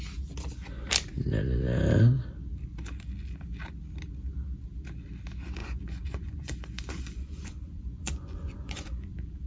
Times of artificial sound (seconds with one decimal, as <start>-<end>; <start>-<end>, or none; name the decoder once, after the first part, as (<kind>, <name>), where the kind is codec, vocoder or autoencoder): 5.6-9.1 (vocoder, Vocos)